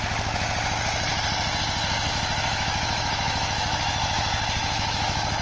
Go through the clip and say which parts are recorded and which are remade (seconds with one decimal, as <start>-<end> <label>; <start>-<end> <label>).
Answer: 0.0-2.1 recorded; 2.1-5.4 remade